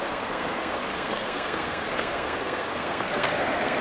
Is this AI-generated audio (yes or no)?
yes